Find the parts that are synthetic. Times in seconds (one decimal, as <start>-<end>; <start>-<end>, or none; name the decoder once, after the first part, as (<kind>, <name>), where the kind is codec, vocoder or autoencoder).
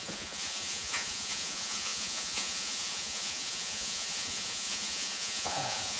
0.0-6.0 (vocoder, Vocos)